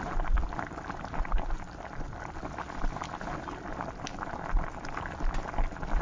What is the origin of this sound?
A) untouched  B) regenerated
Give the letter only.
A